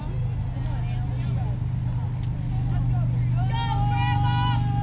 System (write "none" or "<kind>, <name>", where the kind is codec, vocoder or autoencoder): none